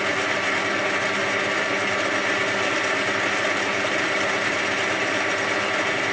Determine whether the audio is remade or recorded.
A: recorded